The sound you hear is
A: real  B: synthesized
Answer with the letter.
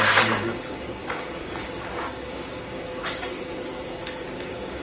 B